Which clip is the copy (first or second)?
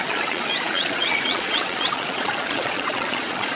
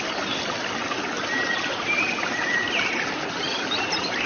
first